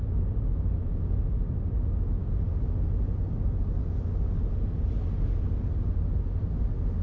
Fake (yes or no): no